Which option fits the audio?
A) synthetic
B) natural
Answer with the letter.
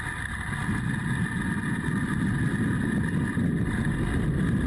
B